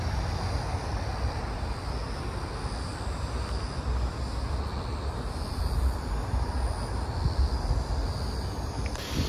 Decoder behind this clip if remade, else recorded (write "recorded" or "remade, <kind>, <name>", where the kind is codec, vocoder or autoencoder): recorded